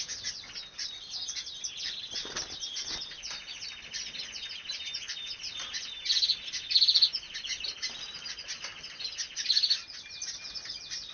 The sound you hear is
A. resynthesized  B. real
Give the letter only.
B